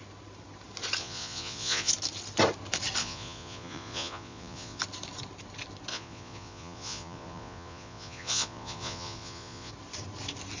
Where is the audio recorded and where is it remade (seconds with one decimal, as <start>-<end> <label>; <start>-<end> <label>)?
0.0-1.0 recorded; 1.0-1.9 remade; 1.9-3.0 recorded; 3.0-4.8 remade; 4.8-5.9 recorded; 5.9-9.7 remade; 9.7-10.6 recorded